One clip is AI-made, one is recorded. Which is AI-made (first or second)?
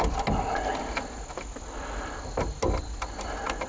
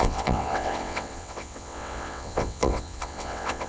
second